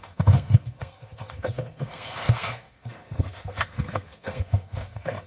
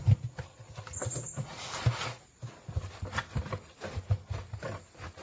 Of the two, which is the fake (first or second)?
first